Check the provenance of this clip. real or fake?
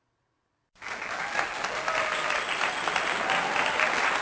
real